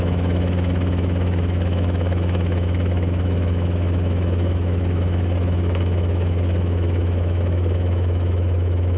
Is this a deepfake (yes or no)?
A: yes